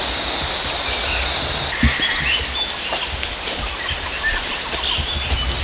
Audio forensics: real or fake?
real